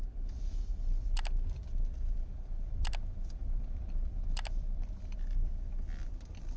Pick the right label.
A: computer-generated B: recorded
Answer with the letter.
A